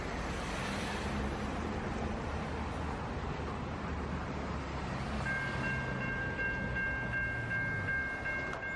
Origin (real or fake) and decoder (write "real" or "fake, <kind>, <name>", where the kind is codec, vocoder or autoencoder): real